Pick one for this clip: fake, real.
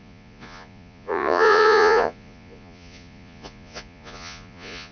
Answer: fake